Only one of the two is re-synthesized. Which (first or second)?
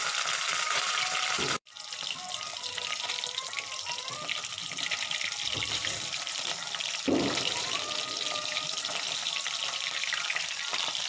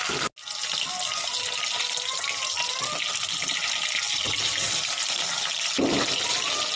first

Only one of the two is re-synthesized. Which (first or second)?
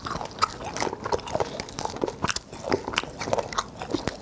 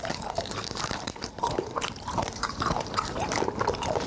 second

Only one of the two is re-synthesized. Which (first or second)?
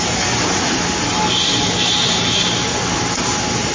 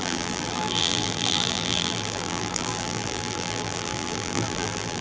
second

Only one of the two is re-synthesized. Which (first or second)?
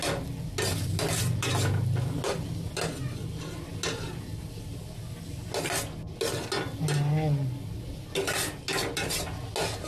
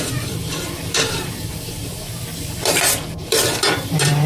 second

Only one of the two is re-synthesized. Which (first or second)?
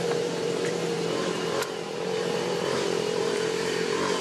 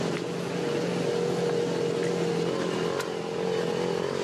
first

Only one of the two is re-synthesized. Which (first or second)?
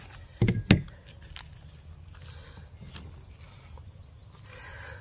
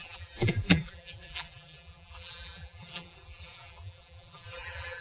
second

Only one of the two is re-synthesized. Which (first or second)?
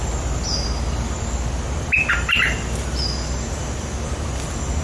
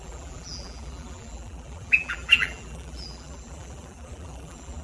second